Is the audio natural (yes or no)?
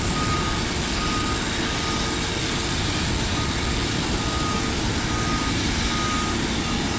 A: yes